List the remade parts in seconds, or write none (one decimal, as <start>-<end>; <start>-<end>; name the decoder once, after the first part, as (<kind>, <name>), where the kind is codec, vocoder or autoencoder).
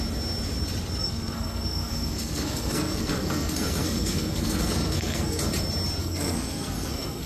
1.0-5.4 (codec, SNAC); 6.0-7.3